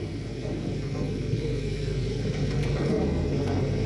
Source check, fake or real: fake